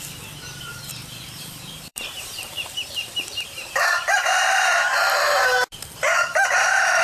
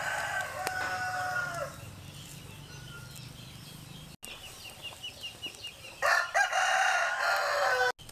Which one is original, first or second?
second